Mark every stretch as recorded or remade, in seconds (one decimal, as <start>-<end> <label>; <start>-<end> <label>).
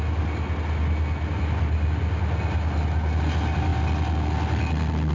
0.0-5.1 recorded